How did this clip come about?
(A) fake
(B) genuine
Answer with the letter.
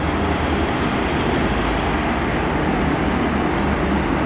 B